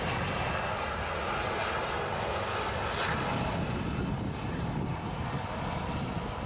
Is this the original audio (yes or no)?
yes